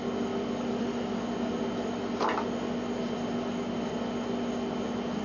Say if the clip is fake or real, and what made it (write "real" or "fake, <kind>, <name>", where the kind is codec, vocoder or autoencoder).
real